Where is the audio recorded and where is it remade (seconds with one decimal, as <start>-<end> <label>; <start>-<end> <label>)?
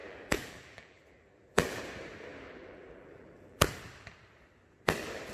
0.0-1.8 remade; 1.8-2.3 recorded; 2.3-3.7 remade; 3.7-5.3 recorded